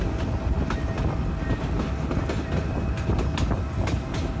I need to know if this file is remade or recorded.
recorded